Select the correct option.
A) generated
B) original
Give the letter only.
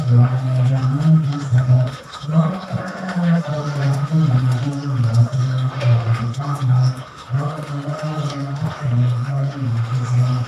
A